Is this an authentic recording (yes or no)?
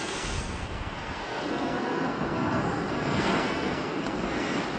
no